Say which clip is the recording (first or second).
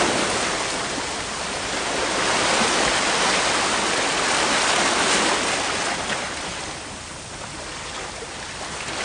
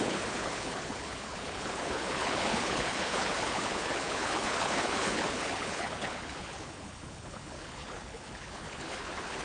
first